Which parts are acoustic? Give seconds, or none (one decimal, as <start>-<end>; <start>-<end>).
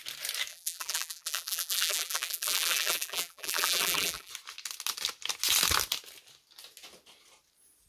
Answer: 0.0-0.5; 4.3-7.9